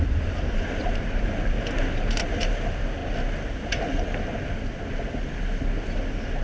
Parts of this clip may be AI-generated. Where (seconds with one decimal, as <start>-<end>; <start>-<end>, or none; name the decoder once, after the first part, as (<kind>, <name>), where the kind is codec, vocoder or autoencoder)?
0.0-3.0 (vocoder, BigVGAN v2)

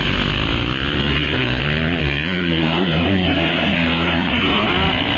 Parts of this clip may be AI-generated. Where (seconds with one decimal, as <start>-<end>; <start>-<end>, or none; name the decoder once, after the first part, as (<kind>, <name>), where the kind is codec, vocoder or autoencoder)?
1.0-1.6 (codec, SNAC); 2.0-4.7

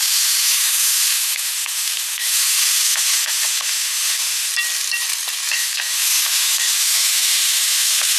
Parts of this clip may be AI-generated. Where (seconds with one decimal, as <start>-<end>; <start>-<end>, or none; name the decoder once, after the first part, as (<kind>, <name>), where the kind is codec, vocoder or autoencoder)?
0.0-4.5 (autoencoder, DAC-VAE); 5.5-8.2

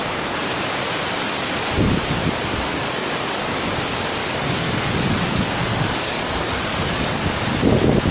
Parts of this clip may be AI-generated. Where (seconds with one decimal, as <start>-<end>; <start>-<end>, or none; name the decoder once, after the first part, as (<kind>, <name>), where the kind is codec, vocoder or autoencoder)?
2.7-3.7 (codec, DAC); 4.2-7.2